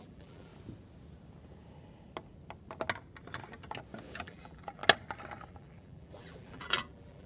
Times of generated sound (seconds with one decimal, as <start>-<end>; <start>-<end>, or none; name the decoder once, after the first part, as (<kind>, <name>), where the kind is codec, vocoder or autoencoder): 0.0-0.5 (vocoder, BigVGAN v2); 4.1-4.8; 5.5-7.3